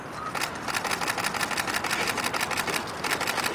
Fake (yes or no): no